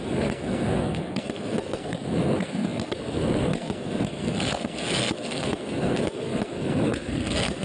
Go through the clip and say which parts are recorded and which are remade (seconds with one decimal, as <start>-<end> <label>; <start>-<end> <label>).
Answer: 0.0-7.6 remade